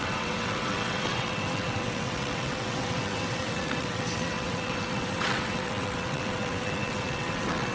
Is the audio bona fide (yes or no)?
no